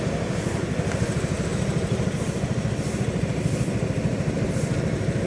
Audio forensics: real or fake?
real